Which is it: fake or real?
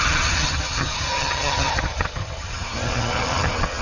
fake